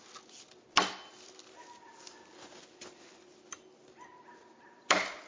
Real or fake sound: real